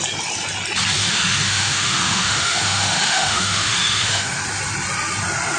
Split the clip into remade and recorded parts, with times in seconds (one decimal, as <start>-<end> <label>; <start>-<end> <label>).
0.0-1.0 recorded; 1.0-4.4 remade; 4.4-5.6 recorded

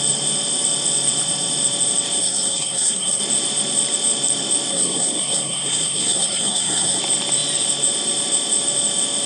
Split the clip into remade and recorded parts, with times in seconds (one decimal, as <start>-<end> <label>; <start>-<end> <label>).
0.0-2.2 recorded; 2.2-3.2 remade; 3.2-4.7 recorded; 4.7-7.0 remade; 7.0-9.3 recorded

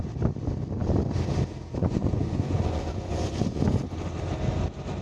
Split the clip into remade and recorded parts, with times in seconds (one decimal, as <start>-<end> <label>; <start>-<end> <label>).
0.0-1.8 recorded; 1.8-3.6 remade; 3.6-5.0 recorded

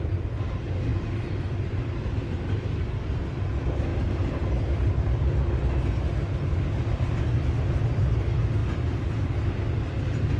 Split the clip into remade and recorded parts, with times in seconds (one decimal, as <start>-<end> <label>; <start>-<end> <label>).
0.0-10.4 recorded

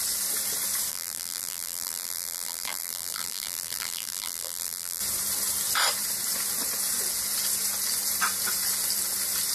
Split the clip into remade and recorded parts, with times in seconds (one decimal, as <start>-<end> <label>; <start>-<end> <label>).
0.0-0.9 recorded; 0.9-5.0 remade; 5.0-9.5 recorded